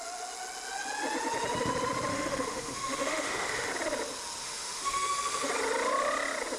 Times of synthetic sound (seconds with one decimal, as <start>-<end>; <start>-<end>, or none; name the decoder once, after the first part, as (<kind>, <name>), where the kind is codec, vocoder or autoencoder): 2.1-3.7 (autoencoder, DAC-VAE); 4.4-5.5